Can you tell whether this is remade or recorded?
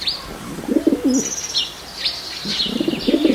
recorded